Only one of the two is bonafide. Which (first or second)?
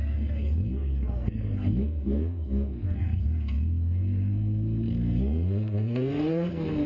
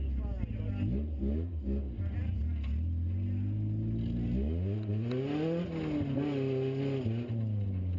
second